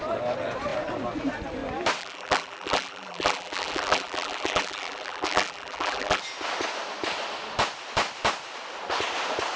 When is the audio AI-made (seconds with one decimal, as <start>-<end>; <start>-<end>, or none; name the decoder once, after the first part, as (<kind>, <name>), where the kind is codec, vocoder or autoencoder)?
2.0-6.2 (vocoder, BigVGAN v2)